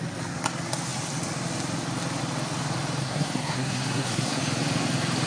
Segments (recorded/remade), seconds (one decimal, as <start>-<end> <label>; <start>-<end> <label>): 0.0-3.0 recorded; 3.0-4.4 remade; 4.4-5.3 recorded